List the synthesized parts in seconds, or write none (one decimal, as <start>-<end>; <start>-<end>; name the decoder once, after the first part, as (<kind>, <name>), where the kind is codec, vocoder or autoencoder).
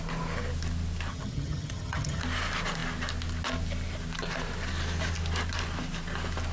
1.1-2.2 (vocoder, HiFi-GAN)